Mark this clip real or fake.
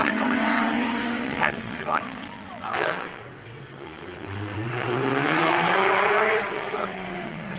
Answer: fake